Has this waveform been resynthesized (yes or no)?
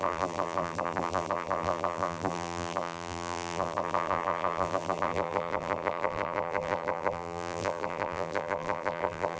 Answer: yes